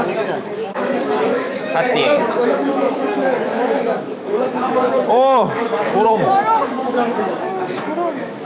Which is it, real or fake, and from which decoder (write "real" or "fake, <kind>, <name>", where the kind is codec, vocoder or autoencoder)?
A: fake, autoencoder, DAC-VAE